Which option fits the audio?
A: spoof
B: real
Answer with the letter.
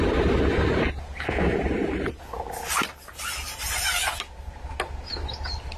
B